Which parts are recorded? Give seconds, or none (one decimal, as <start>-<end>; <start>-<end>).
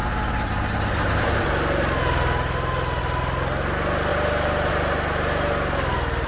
0.0-6.3